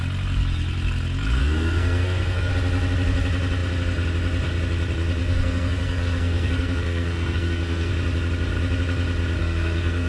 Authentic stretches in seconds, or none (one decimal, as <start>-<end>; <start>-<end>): 0.0-1.4; 2.5-5.2; 7.9-9.4

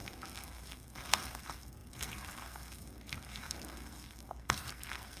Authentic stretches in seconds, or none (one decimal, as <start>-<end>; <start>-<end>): none

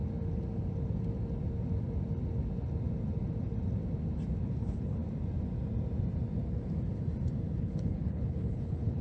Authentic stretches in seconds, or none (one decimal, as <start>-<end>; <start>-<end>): 0.0-4.4; 5.0-7.6

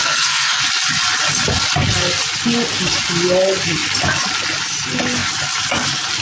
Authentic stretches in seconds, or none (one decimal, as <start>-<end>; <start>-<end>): 0.6-6.2

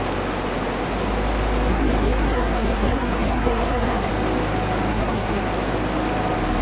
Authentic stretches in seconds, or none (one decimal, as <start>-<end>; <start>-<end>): 0.0-1.7; 4.1-4.9; 5.4-6.6

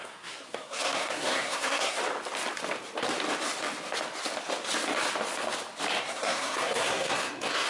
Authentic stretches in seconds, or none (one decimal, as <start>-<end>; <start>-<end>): 2.0-6.0